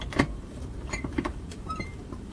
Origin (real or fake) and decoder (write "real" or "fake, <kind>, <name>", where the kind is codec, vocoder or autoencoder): fake, vocoder, BigVGAN v2